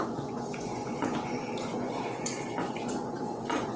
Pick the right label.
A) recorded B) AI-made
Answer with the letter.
B